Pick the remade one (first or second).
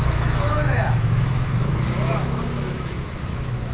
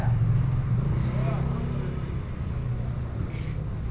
first